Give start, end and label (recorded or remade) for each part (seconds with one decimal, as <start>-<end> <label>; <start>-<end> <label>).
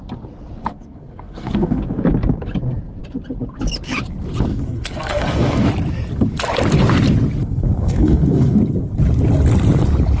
0.0-0.6 recorded; 0.6-2.1 remade; 2.1-4.5 recorded; 4.5-5.7 remade; 5.7-7.4 recorded; 7.4-8.6 remade; 8.6-10.2 recorded